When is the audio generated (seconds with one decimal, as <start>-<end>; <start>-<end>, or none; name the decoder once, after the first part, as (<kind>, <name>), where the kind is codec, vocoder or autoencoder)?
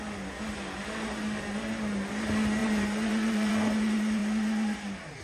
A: 2.6-3.5 (vocoder, BigVGAN v2)